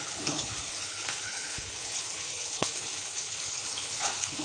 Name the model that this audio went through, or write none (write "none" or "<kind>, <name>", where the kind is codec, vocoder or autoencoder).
codec, HILCodec